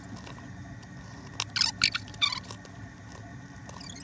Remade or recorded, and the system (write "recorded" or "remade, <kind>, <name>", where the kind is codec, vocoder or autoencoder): recorded